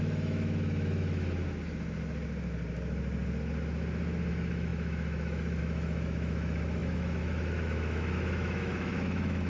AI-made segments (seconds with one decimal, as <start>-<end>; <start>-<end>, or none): 0.0-1.4; 4.3-9.5